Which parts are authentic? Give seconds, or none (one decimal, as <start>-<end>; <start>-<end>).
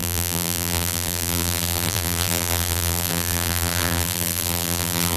none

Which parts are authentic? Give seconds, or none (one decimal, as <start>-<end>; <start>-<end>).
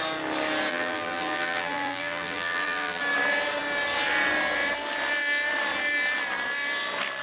0.0-0.7; 3.0-7.2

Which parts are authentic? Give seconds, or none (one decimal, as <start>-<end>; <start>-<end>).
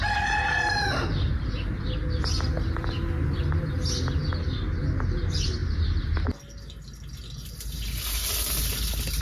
0.0-9.2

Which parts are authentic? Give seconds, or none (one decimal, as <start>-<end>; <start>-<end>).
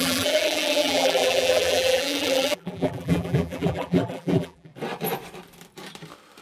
4.7-6.4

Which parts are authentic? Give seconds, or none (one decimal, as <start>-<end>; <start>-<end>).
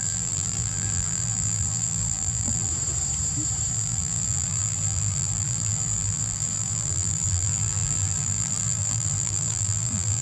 2.7-3.7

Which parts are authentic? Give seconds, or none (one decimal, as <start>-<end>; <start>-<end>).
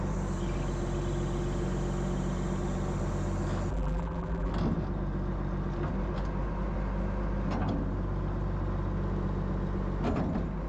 0.0-3.7; 4.5-10.7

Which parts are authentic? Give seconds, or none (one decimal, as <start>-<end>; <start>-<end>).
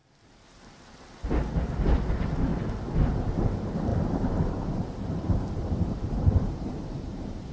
0.0-2.1; 2.5-3.2